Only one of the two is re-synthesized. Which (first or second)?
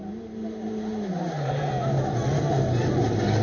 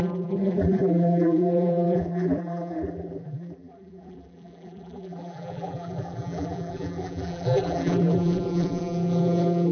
second